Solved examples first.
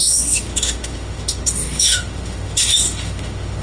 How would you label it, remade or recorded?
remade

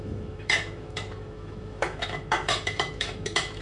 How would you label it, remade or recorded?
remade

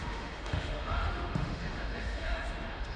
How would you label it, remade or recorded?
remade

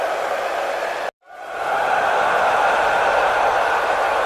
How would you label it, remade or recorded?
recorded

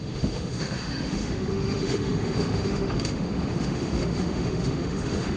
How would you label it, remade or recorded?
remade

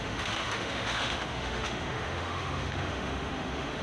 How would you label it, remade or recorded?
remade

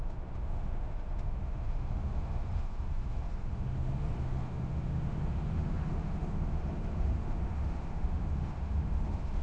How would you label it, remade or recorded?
remade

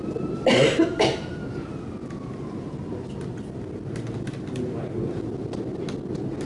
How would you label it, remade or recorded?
recorded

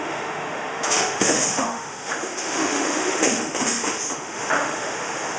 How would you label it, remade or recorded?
remade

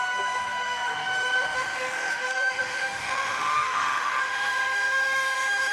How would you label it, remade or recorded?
remade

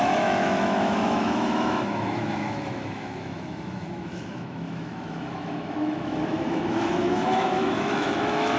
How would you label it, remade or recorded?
remade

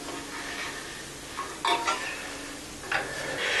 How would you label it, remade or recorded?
recorded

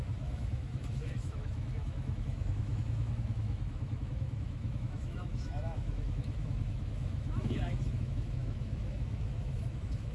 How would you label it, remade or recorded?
remade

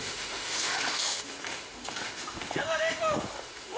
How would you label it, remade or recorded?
remade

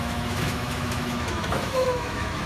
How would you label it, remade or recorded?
remade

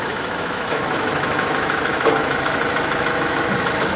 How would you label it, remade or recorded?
remade